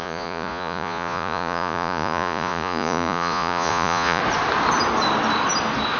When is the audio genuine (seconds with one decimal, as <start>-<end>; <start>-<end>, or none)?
4.2-6.0